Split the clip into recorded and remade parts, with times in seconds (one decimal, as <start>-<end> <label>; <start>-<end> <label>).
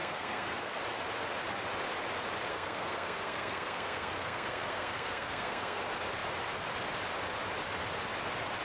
0.0-0.8 remade; 0.8-2.5 recorded; 2.5-5.8 remade; 5.8-8.6 recorded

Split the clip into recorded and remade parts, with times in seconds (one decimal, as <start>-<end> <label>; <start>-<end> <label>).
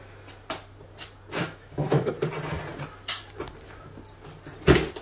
0.0-1.4 recorded; 1.4-2.1 remade; 2.1-5.0 recorded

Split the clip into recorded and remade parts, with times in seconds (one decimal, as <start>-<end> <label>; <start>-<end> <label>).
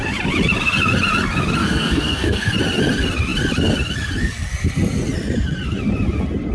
0.0-1.6 recorded; 1.6-2.5 remade; 2.5-6.5 recorded